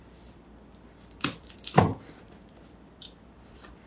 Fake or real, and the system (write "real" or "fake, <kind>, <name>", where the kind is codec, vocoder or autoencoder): fake, vocoder, BigVGAN v2